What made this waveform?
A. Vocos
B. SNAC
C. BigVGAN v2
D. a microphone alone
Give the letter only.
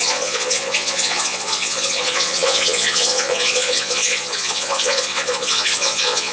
A